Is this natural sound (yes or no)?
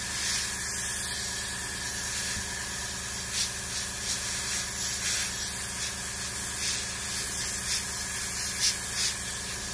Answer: yes